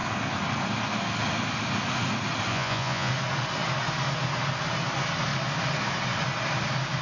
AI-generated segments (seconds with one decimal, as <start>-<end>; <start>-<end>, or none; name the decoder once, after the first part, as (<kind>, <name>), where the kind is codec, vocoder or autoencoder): 2.5-3.1 (vocoder, Vocos)